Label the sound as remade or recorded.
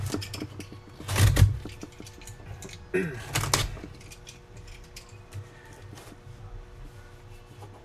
recorded